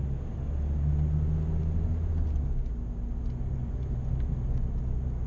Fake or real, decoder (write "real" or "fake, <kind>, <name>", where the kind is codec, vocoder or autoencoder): real